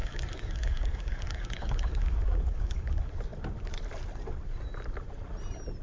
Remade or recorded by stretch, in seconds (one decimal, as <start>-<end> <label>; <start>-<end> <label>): 0.0-2.9 remade; 2.9-5.8 recorded